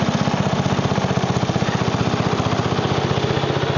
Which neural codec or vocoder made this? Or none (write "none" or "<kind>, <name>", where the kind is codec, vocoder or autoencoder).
none